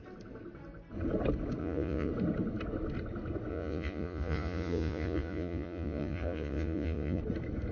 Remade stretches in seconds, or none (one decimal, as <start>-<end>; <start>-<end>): 1.6-2.1; 3.5-7.2